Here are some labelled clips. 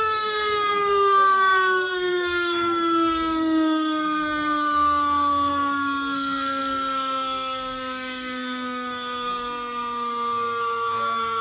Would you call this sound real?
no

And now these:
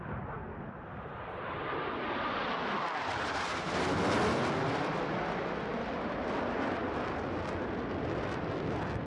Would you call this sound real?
yes